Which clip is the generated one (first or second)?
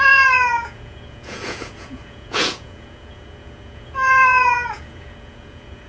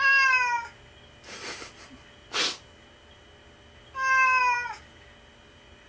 first